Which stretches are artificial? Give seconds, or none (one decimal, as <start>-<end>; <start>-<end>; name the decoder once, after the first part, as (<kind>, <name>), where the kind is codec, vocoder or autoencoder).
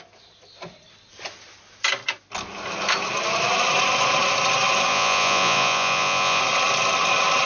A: 4.9-6.4 (vocoder, Vocos)